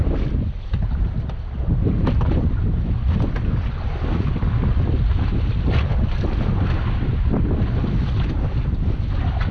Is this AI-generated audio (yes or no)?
no